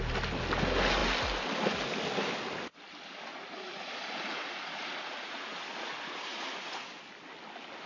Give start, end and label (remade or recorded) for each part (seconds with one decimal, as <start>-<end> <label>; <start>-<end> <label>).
0.0-3.3 recorded; 3.3-7.0 remade; 7.0-7.9 recorded